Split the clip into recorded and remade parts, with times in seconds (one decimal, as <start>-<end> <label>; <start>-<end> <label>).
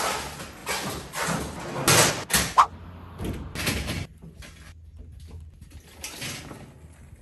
0.0-7.2 recorded